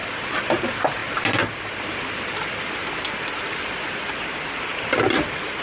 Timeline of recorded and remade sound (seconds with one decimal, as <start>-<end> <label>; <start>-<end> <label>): 0.0-5.6 recorded